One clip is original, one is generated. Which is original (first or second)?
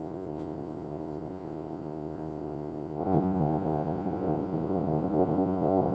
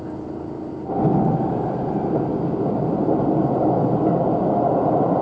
second